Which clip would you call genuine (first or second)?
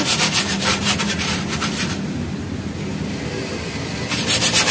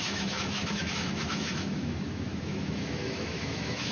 first